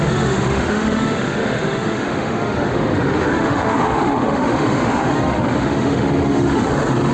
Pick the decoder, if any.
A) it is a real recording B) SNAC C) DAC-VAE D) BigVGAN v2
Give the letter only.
C